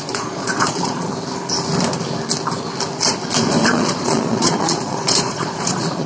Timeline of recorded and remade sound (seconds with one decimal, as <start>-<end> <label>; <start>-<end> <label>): 0.0-1.1 remade; 1.1-3.7 recorded; 3.7-6.1 remade